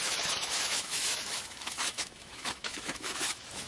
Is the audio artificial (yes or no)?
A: yes